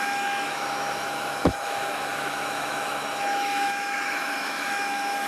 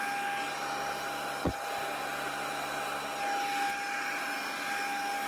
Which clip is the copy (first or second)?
first